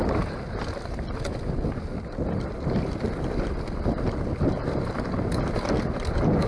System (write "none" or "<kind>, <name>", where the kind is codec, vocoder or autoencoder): none